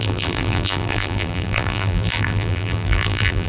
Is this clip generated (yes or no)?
yes